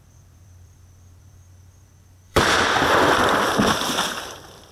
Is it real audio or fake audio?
fake